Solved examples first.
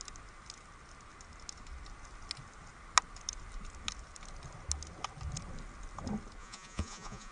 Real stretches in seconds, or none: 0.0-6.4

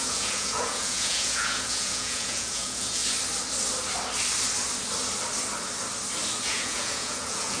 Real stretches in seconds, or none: 3.0-6.5

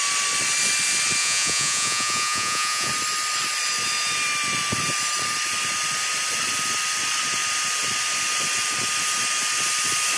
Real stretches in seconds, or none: 0.0-1.2; 2.9-10.2

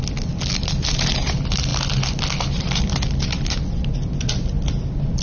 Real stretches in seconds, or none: 0.0-5.2

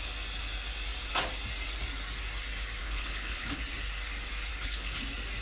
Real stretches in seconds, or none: 0.0-2.8; 3.6-4.5; 5.0-5.4